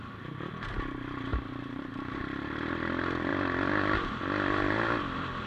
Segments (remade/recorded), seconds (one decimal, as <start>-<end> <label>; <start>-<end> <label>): 0.0-1.3 recorded; 1.3-2.2 remade; 2.2-5.5 recorded